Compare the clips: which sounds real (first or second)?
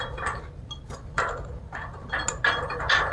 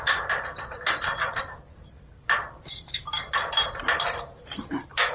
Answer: first